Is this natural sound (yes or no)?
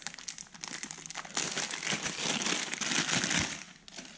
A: yes